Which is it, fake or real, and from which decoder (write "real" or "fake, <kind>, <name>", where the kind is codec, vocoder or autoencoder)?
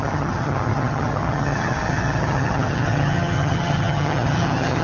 fake, vocoder, HiFi-GAN